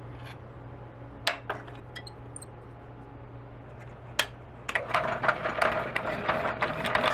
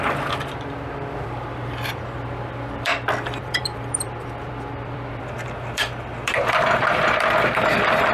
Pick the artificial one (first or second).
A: second